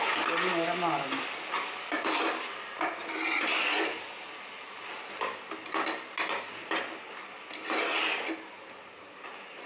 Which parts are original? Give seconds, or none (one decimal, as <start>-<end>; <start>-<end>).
0.0-9.7